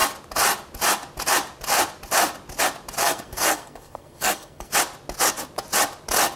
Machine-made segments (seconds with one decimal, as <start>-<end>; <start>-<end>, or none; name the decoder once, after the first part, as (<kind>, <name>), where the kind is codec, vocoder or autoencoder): 3.0-4.7 (codec, SNAC)